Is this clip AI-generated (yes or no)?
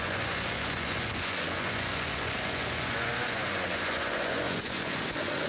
yes